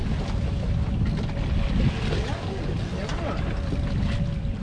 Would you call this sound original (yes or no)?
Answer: yes